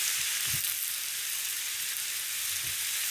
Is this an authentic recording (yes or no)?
yes